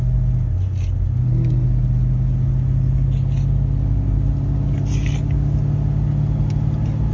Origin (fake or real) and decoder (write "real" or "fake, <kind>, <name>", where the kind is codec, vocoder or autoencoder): real